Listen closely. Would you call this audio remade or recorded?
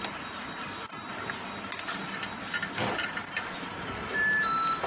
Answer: recorded